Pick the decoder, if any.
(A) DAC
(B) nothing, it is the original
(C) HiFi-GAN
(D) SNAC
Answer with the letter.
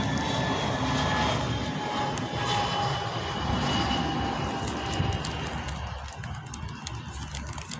B